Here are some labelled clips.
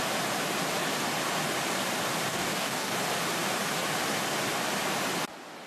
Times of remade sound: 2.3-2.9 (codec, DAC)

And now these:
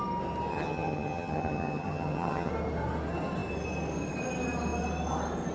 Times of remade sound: 0.5-2.5 (vocoder, HiFi-GAN)

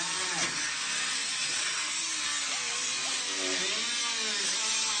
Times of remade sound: 1.2-1.8 (vocoder, WaveNeXt)

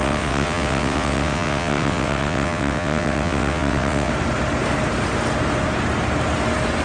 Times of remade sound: 0.0-4.1 (vocoder, WaveNeXt)

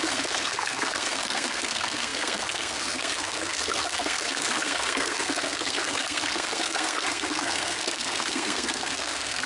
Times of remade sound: 0.0-9.5 (codec, SNAC)